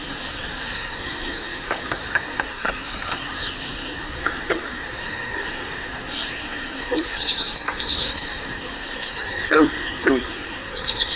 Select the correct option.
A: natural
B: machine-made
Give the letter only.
B